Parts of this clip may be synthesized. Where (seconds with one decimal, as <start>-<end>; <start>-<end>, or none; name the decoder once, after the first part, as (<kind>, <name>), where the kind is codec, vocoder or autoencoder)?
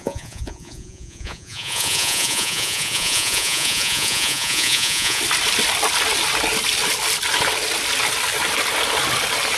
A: 0.0-5.2 (vocoder, Vocos)